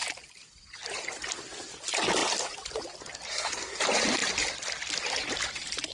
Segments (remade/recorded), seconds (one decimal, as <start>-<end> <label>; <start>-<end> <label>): 0.0-3.3 recorded; 3.3-3.8 remade; 3.8-5.9 recorded